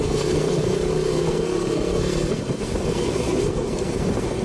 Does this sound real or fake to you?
fake